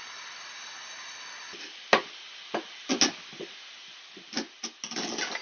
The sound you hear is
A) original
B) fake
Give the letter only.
A